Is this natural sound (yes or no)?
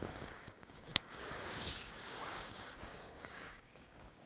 no